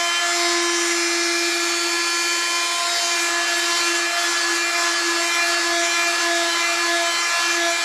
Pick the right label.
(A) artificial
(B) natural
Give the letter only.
B